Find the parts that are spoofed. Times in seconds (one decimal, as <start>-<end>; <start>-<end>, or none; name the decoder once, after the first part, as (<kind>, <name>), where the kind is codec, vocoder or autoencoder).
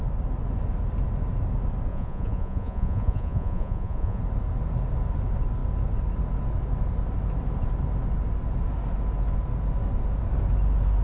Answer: 1.9-4.2 (vocoder, Vocos)